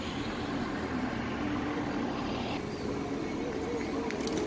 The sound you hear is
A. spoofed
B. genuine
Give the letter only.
B